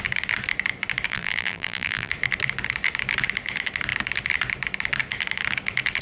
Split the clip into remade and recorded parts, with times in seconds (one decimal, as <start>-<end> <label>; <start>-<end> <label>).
0.0-1.1 recorded; 1.1-2.1 remade; 2.1-6.0 recorded